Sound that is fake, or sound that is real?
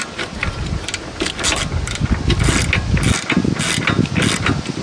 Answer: real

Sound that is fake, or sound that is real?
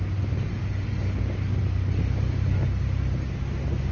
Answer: real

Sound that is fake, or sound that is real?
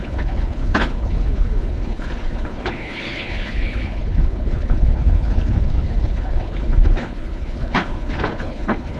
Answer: fake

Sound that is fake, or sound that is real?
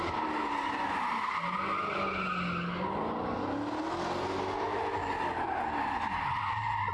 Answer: real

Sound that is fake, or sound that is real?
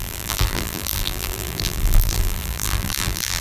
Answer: fake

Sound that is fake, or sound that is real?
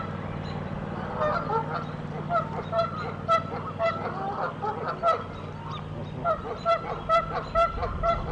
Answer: real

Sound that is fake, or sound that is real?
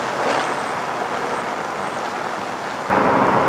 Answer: real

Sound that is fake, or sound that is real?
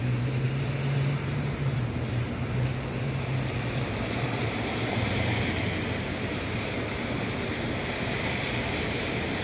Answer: fake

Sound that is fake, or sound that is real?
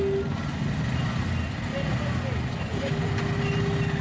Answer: real